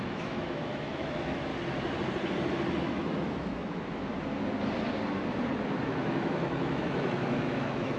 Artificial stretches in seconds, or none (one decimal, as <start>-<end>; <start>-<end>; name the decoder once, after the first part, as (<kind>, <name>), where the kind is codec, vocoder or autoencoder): 0.0-1.5 (autoencoder, DAC-VAE); 2.8-4.1; 5.8-8.0